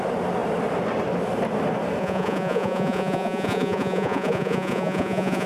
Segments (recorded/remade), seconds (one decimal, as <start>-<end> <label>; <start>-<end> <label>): 0.0-2.0 recorded; 2.0-5.5 remade